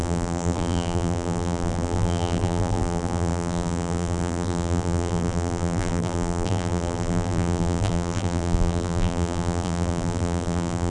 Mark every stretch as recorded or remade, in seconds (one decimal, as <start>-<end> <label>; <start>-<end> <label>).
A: 0.0-10.9 remade